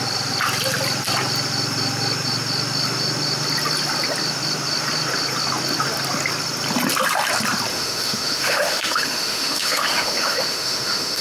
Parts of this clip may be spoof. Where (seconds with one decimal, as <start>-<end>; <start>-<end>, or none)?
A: 7.7-11.2